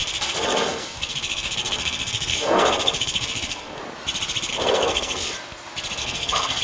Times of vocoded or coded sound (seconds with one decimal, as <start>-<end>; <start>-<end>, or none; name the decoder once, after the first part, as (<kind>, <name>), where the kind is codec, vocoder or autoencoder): 0.0-3.8 (codec, SNAC); 4.5-5.3; 6.0-6.6

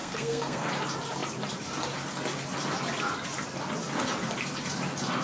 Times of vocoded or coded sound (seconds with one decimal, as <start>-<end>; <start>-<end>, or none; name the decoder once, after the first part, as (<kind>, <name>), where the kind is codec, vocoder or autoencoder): 0.0-0.7 (codec, SNAC)

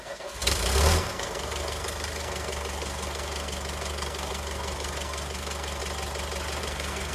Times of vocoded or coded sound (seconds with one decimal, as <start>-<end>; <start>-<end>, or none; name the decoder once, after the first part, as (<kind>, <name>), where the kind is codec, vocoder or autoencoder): 0.0-5.8 (codec, SNAC); 6.6-7.1